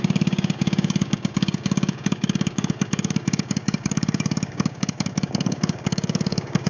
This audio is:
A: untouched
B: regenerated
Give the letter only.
B